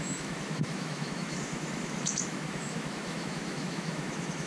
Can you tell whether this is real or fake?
fake